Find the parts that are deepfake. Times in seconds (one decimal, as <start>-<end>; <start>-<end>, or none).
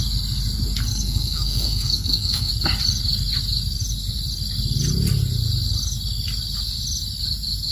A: 0.9-2.5